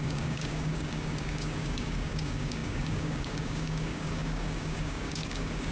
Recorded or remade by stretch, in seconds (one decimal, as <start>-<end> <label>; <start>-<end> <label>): 0.0-5.7 remade